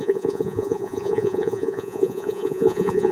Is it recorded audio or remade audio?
remade